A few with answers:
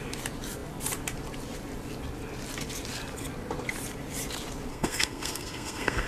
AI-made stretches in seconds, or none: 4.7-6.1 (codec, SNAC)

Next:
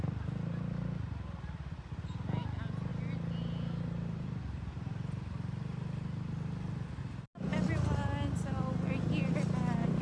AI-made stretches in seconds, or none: none

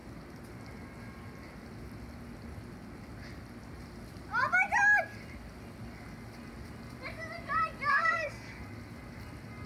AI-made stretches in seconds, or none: 7.9-8.6 (codec, SNAC)

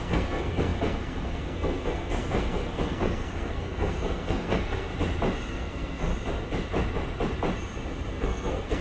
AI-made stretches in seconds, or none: 0.0-4.9 (codec, SNAC); 5.5-6.1; 8.1-8.8

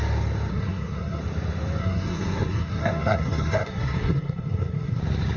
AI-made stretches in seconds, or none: 0.5-1.2 (codec, SNAC); 1.8-5.0